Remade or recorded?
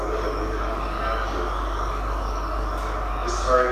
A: remade